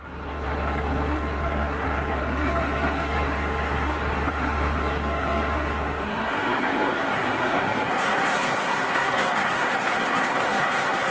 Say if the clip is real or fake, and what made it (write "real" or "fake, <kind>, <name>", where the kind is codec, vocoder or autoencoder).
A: fake, codec, SNAC